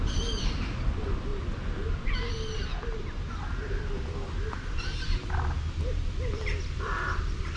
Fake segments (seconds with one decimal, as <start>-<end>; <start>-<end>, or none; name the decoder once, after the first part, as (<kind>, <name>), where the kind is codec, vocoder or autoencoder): 2.7-3.4 (vocoder, BigVGAN v2)